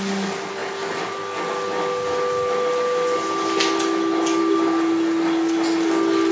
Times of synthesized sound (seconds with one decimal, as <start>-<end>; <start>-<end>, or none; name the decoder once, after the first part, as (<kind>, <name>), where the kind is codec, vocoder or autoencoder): none